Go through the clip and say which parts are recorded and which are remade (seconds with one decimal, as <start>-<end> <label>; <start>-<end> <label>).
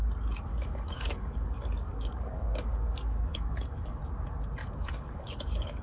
0.0-0.5 recorded; 0.5-4.0 remade; 4.0-4.6 recorded; 4.6-5.8 remade